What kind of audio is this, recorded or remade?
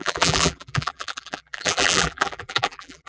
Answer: remade